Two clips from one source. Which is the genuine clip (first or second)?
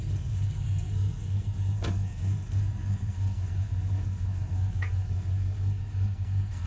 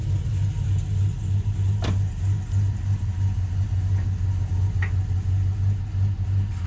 second